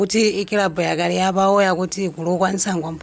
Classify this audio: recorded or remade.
recorded